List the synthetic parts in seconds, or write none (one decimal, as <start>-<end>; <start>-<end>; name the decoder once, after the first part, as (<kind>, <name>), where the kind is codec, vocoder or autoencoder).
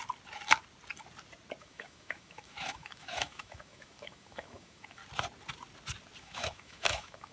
1.6-5.0 (autoencoder, DAC-VAE); 6.2-7.3